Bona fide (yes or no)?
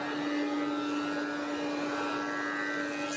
yes